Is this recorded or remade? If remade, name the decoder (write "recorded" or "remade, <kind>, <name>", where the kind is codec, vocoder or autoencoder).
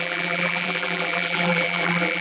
remade, vocoder, BigVGAN v2